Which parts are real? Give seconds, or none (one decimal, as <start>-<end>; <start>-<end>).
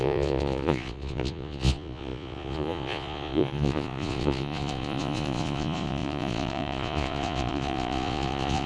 none